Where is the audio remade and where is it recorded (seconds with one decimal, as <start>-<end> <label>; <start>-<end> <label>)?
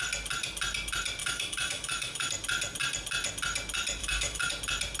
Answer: 0.0-1.2 recorded; 1.2-2.3 remade; 2.3-4.0 recorded; 4.0-4.5 remade; 4.5-5.0 recorded